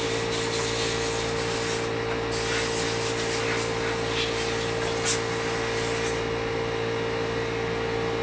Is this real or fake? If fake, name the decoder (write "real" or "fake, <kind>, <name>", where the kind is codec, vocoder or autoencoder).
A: real